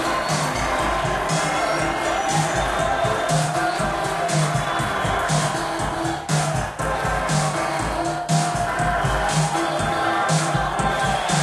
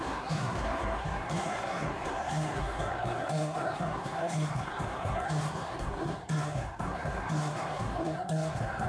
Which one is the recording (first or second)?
first